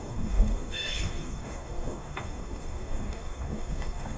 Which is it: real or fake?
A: fake